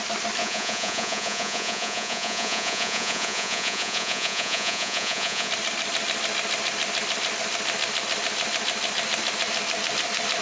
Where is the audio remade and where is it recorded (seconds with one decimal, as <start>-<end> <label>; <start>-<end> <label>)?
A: 0.0-0.4 recorded; 0.4-5.5 remade; 5.5-10.4 recorded

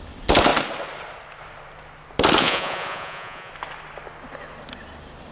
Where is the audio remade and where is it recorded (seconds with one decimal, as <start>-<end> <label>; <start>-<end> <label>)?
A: 0.0-2.4 recorded; 2.4-3.5 remade; 3.5-5.3 recorded

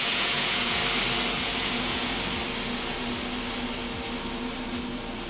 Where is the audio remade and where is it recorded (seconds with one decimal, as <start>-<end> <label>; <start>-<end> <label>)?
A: 0.0-0.8 remade; 0.8-1.4 recorded; 1.4-2.1 remade; 2.1-5.3 recorded